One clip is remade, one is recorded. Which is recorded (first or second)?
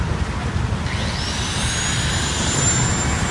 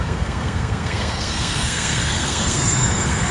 first